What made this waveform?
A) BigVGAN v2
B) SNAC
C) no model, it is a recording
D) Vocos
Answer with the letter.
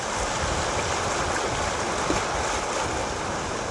C